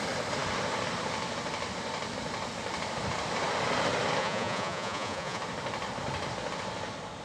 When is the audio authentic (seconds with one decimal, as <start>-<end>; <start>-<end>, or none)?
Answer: 0.0-4.2; 5.4-7.2